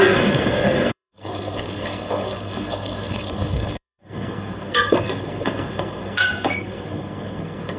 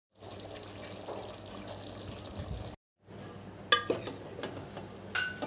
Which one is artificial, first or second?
first